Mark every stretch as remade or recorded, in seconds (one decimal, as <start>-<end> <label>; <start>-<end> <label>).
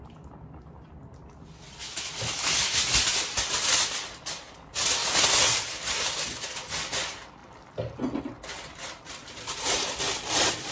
0.0-1.8 recorded; 1.8-2.8 remade; 2.8-10.7 recorded